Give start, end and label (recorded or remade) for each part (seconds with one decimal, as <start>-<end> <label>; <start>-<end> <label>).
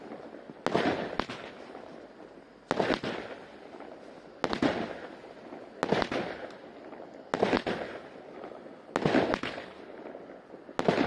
0.0-11.1 recorded